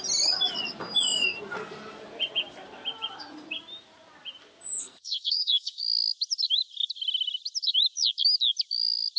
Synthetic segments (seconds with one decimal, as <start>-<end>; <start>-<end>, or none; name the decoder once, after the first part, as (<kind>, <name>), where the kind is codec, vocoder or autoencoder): 4.8-5.8 (codec, SNAC)